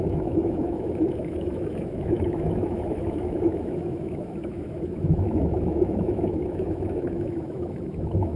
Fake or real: fake